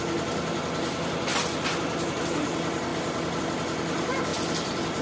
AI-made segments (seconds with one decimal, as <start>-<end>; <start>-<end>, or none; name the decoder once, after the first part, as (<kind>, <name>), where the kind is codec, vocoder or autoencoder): none

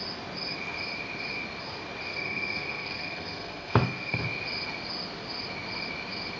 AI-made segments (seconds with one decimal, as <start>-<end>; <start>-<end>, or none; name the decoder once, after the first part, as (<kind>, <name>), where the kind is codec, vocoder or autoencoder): 2.1-4.2 (codec, SNAC)

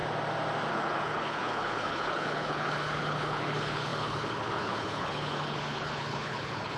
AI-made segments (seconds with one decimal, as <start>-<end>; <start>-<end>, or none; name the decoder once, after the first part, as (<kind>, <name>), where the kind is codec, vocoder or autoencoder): 0.7-6.8 (codec, HILCodec)